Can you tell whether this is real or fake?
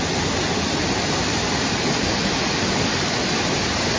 fake